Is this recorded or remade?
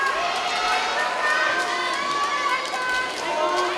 recorded